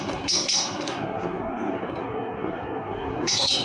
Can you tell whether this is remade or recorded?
remade